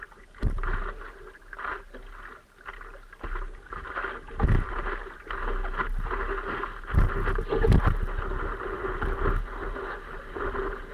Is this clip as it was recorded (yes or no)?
yes